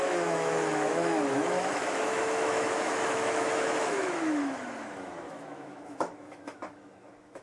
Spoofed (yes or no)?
yes